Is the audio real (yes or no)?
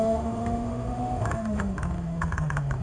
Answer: no